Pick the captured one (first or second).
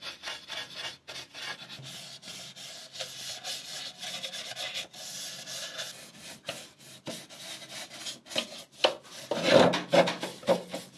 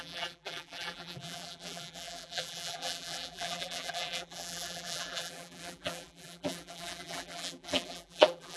first